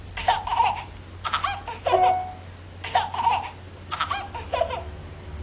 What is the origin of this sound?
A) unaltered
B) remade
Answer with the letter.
A